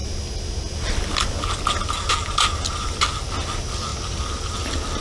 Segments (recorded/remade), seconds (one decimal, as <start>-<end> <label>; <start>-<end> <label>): 0.0-5.0 recorded